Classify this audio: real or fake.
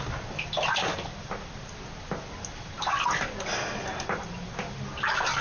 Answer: real